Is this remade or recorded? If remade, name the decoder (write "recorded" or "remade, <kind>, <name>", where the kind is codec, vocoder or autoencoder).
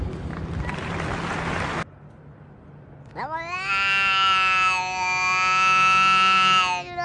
recorded